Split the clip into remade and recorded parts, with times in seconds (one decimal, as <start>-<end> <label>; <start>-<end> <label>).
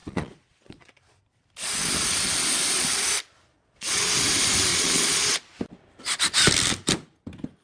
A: 0.0-1.2 remade; 1.2-3.5 recorded; 3.5-4.1 remade; 4.1-4.7 recorded; 4.7-5.2 remade; 5.2-7.6 recorded